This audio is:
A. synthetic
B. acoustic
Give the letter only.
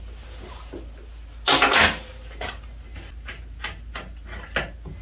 B